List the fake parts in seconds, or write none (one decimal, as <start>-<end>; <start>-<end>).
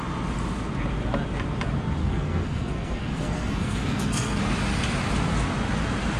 2.0-4.4